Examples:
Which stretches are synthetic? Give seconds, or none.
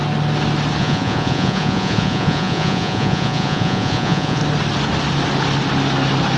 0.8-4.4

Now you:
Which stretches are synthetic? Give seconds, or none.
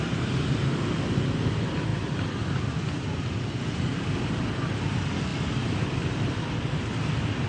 1.9-2.6; 5.3-7.5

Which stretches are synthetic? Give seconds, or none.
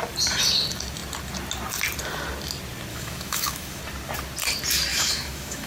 2.9-3.8; 4.9-5.7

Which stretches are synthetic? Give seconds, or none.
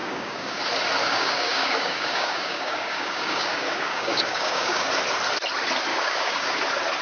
0.0-0.6; 1.0-4.9; 5.9-6.6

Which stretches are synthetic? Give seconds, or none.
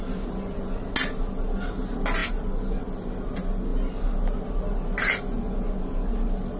none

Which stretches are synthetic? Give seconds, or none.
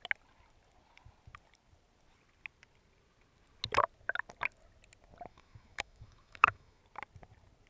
5.3-6.8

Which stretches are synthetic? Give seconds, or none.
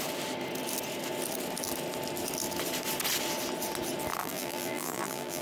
4.2-5.4